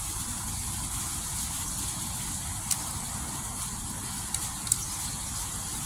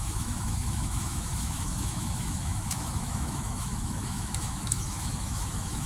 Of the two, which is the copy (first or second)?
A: second